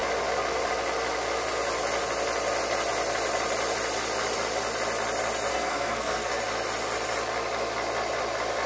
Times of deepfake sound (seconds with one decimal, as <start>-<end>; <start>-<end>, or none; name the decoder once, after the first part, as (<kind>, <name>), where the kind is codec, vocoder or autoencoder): 5.5-6.3 (codec, SNAC)